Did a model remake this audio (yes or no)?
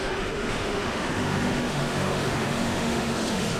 yes